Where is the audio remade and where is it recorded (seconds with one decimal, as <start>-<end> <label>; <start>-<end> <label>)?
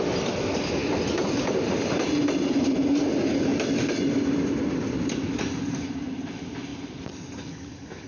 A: 0.0-8.1 recorded